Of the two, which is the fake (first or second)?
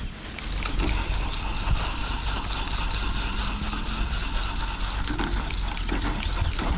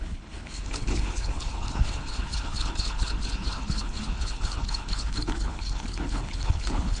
second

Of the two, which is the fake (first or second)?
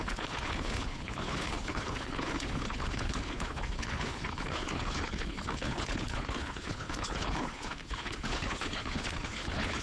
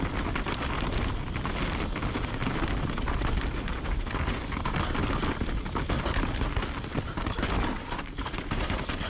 first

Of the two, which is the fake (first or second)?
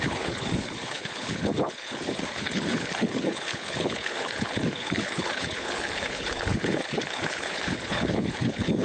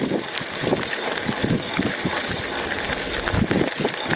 first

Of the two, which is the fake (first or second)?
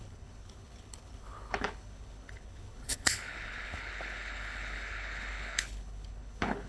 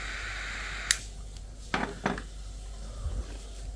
first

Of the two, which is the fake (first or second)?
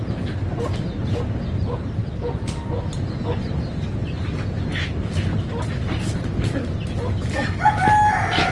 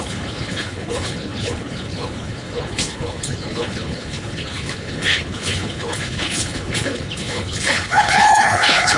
second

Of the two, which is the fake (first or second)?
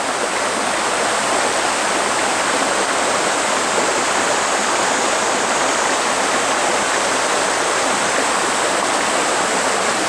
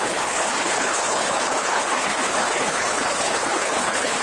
second